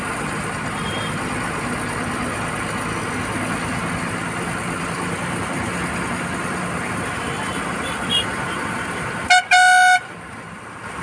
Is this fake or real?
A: real